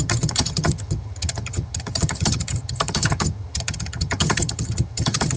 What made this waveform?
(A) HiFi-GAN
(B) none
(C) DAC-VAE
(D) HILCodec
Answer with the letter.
A